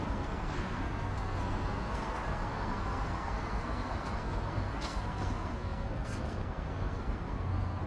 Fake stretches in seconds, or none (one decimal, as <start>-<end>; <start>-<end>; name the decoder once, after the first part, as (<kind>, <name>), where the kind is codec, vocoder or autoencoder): 0.0-7.9 (codec, SNAC)